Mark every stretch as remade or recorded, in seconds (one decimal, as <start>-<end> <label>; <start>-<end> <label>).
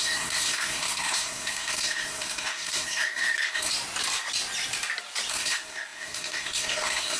0.0-3.7 remade; 3.7-5.3 recorded; 5.3-7.2 remade